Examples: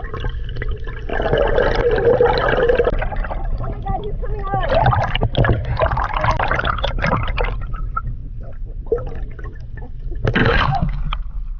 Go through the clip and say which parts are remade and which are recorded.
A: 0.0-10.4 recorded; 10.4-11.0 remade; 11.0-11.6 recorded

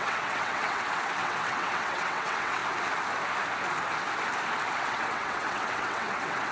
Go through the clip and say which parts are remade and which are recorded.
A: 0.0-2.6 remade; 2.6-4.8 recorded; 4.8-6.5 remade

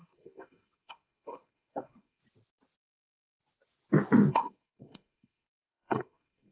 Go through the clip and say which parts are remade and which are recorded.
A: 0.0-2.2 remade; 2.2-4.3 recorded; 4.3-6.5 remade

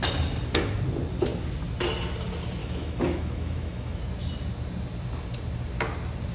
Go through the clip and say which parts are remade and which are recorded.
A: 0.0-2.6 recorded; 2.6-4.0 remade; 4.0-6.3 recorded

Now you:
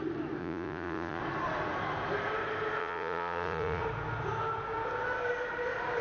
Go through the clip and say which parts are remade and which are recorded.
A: 0.0-0.4 recorded; 0.4-1.2 remade; 1.2-2.8 recorded; 2.8-3.8 remade; 3.8-6.0 recorded

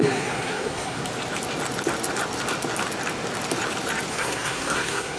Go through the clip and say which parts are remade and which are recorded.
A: 0.0-1.0 remade; 1.0-4.1 recorded; 4.1-5.2 remade

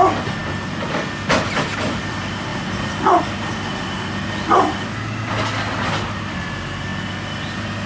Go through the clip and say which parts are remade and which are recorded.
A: 0.0-7.9 recorded

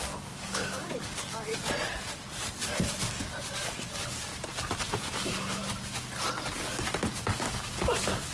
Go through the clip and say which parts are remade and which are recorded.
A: 0.0-1.5 remade; 1.5-3.6 recorded; 3.6-4.3 remade; 4.3-5.1 recorded; 5.1-5.6 remade; 5.6-7.2 recorded; 7.2-8.3 remade